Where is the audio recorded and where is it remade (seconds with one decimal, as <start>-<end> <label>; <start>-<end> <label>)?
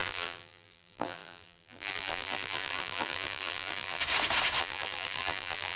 0.0-4.0 remade; 4.0-4.6 recorded; 4.6-5.8 remade